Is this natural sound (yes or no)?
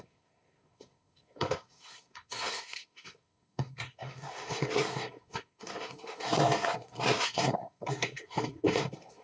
no